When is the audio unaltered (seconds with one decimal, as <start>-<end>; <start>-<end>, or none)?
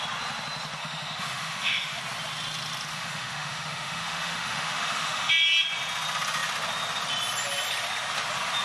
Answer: 0.0-0.8; 2.0-2.9; 5.3-8.6